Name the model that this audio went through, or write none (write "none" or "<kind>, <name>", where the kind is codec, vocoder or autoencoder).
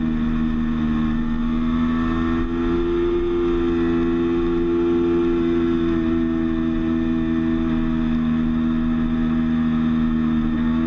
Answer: none